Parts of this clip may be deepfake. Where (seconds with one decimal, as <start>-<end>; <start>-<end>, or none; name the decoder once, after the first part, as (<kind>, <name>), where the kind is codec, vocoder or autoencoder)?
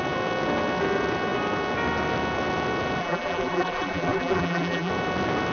3.0-4.9 (vocoder, BigVGAN v2)